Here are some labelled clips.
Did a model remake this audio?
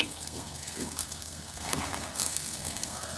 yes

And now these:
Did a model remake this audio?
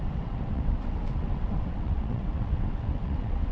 yes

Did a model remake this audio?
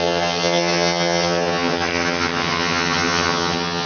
yes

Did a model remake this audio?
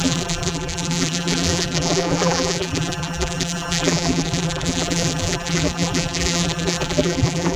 yes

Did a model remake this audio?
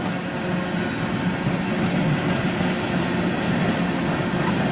no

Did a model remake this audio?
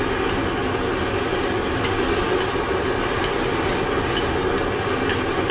no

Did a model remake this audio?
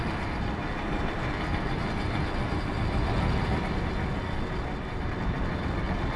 no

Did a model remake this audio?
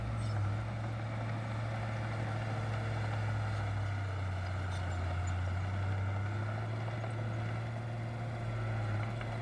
no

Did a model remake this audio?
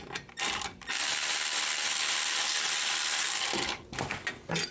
no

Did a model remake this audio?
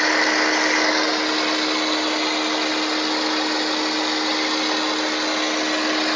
no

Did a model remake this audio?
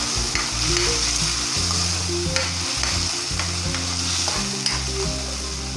no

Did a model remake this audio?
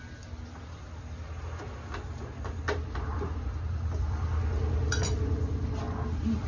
no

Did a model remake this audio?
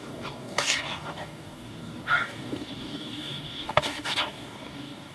yes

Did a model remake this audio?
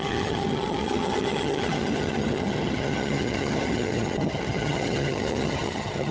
yes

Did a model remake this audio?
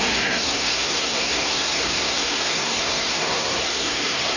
yes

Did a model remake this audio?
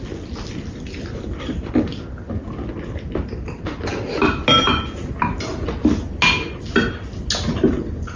no